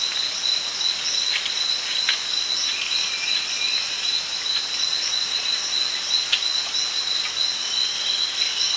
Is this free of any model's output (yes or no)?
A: yes